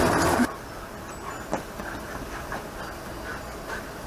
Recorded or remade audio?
recorded